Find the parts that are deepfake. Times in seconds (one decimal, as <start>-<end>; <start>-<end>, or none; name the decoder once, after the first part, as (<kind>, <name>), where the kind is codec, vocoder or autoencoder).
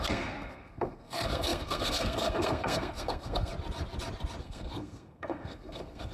0.0-3.5 (codec, SNAC); 4.4-6.1